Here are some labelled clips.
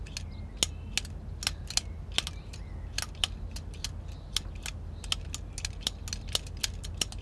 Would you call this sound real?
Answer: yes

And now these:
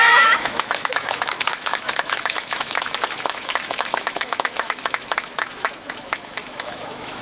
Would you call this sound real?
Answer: no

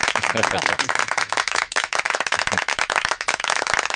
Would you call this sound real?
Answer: no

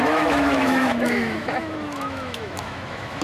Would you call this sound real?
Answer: no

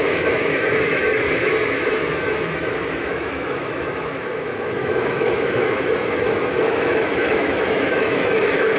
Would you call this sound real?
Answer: no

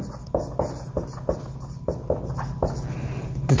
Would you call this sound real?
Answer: yes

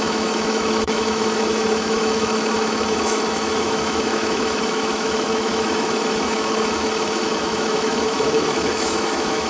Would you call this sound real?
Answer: no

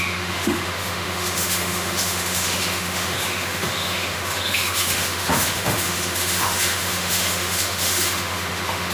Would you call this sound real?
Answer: no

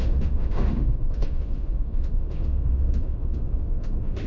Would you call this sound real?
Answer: no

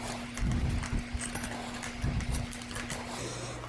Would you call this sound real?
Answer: yes